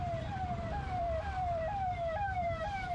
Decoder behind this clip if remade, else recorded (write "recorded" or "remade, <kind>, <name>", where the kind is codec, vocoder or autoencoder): remade, vocoder, BigVGAN v2